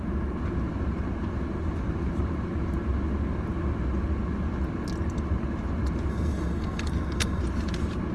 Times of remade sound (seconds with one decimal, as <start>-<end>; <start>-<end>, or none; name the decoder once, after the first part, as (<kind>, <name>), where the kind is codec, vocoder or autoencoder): 6.1-7.4 (codec, SNAC)